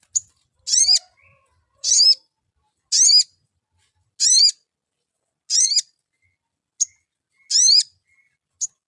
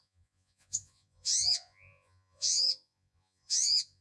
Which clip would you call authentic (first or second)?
first